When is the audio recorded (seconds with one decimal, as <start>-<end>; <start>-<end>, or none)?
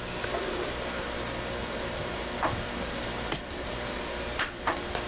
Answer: 0.0-1.6